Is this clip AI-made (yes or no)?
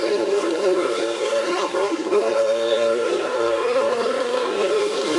yes